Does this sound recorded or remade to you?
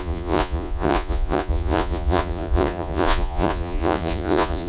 remade